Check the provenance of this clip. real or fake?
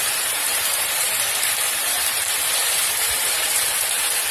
fake